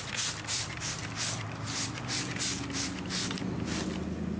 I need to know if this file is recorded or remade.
recorded